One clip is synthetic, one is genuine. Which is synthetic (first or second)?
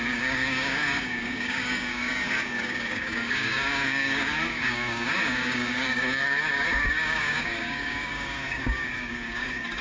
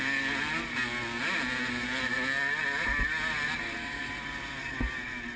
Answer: first